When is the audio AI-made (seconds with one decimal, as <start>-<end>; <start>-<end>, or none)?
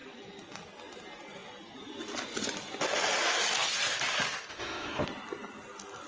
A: 4.5-5.0